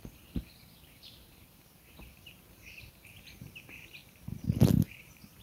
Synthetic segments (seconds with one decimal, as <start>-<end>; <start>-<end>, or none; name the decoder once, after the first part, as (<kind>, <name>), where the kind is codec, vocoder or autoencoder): 0.0-4.0 (vocoder, BigVGAN v2); 5.0-5.4